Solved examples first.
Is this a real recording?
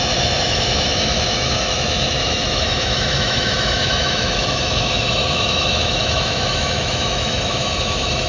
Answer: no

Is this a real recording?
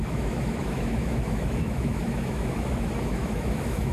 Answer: no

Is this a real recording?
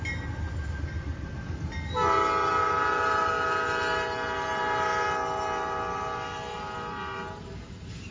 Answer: yes